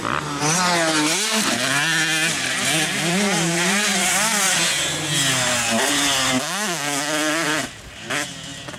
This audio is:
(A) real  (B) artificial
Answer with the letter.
A